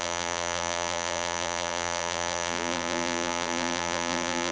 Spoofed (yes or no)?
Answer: yes